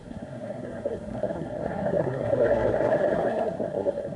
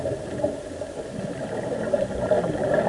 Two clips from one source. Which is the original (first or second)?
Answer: second